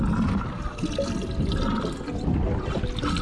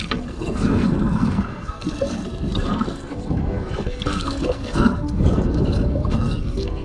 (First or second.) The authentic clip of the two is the first